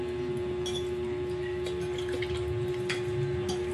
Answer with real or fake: real